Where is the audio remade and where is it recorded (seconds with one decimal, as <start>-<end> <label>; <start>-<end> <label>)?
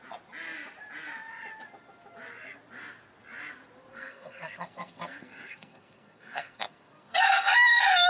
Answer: 0.0-3.9 recorded; 3.9-8.1 remade